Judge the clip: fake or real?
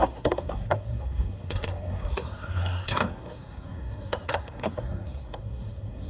fake